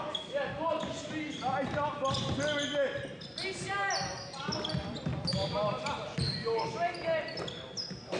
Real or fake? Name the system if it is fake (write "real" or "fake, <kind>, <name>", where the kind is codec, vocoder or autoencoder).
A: real